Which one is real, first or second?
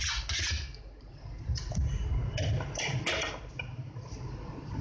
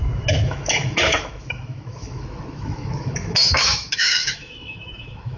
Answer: first